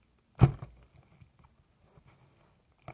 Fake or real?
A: real